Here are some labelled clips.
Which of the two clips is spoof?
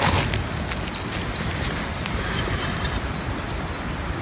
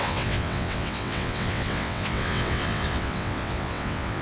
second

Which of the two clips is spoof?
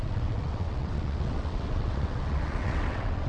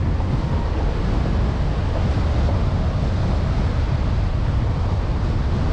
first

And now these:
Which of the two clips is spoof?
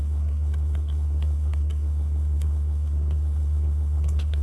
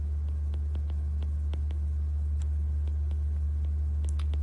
first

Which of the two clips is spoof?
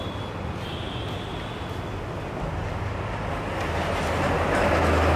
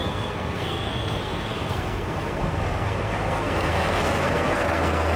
second